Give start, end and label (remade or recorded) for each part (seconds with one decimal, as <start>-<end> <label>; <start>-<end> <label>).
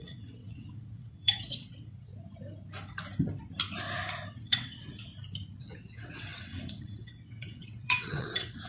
0.0-2.1 remade; 2.1-4.3 recorded; 4.3-5.1 remade; 5.1-5.6 recorded; 5.6-8.7 remade